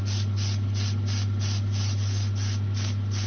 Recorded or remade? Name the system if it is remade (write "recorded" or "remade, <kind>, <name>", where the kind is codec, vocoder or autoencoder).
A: recorded